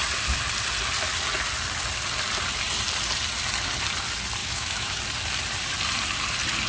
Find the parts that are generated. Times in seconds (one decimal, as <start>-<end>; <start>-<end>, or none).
4.4-5.0